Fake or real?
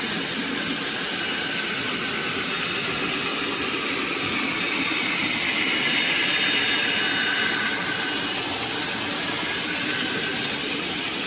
real